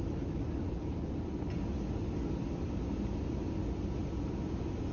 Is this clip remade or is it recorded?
recorded